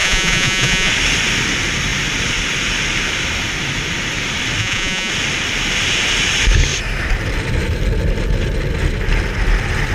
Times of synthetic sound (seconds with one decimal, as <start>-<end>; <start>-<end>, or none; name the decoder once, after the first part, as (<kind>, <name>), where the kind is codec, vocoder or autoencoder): 0.0-0.9 (vocoder, Vocos); 4.6-5.1